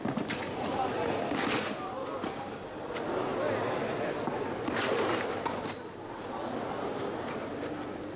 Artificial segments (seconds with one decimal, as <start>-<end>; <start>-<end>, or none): none